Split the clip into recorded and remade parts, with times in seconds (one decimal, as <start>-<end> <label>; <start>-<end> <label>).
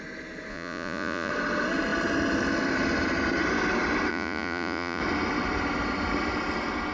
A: 0.0-0.5 recorded; 0.5-1.3 remade; 1.3-4.1 recorded; 4.1-5.0 remade; 5.0-6.9 recorded